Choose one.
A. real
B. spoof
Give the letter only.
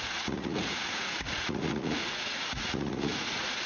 B